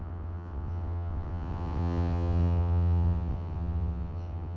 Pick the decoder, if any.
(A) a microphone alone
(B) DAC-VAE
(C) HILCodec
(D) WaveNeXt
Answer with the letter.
D